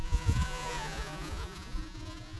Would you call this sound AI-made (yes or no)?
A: yes